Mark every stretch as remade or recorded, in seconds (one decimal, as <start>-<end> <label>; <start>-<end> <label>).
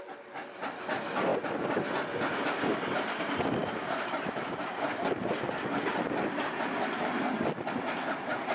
0.0-8.5 recorded